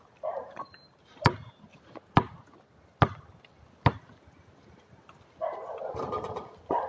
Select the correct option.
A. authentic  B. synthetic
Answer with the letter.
A